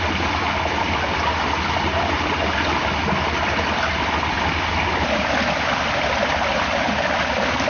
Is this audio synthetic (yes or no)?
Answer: no